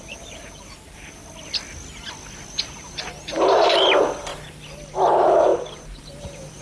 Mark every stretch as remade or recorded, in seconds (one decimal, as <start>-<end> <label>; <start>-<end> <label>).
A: 0.0-1.2 remade; 1.2-2.6 recorded; 2.6-4.3 remade; 4.3-5.1 recorded; 5.1-6.6 remade